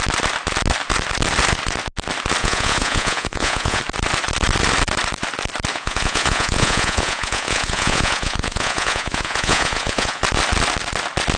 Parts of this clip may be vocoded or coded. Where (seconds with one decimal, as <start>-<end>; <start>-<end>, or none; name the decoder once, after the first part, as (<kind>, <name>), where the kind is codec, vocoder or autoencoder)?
2.4-3.8 (vocoder, Vocos); 5.7-10.2